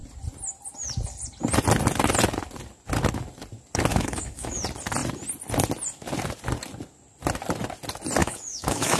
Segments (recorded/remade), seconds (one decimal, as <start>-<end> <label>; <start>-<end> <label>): 0.0-3.9 recorded; 3.9-4.6 remade; 4.6-8.2 recorded; 8.2-9.0 remade